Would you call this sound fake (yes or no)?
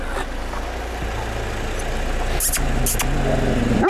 no